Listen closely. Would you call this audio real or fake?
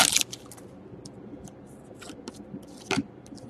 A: fake